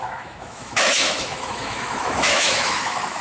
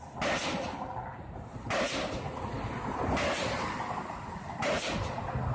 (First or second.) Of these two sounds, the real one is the second